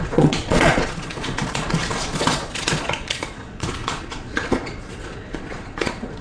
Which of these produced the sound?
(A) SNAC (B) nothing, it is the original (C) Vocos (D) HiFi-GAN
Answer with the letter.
C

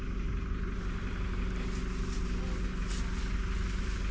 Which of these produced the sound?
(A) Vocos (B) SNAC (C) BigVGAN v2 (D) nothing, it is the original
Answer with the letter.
D